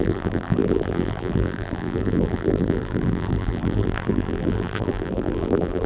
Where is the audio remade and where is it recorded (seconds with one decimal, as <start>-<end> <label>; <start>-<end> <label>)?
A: 0.0-5.9 remade

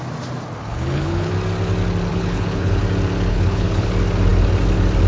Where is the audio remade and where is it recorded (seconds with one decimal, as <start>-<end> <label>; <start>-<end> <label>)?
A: 0.0-0.6 recorded; 0.6-1.3 remade; 1.3-2.1 recorded; 2.1-2.8 remade; 2.8-3.3 recorded; 3.3-3.9 remade; 3.9-5.1 recorded

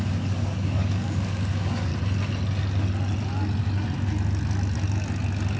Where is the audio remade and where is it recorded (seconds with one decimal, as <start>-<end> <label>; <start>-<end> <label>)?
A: 0.0-1.9 remade; 1.9-5.6 recorded

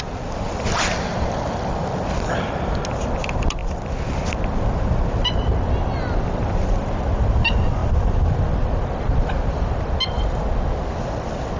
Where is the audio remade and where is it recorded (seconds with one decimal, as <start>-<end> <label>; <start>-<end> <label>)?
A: 0.0-11.6 recorded

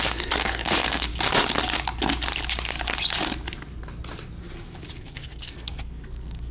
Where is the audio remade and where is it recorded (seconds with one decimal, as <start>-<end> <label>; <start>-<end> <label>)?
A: 0.0-1.1 remade; 1.1-5.0 recorded; 5.0-6.5 remade

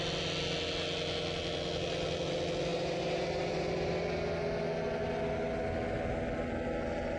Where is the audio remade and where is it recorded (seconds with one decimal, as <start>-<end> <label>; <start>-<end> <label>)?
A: 0.0-2.7 recorded; 2.7-3.9 remade; 3.9-7.2 recorded

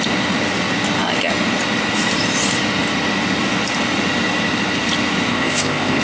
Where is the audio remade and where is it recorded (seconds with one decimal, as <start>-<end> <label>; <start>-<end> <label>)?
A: 0.0-5.3 recorded; 5.3-6.0 remade